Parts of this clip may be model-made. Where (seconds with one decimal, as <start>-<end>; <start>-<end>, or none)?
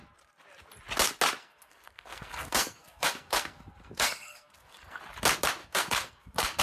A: 1.4-5.0; 5.6-6.6